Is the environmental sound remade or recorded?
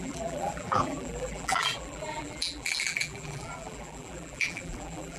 remade